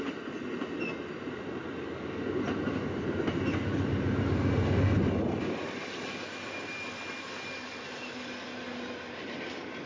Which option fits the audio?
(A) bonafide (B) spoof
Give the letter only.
A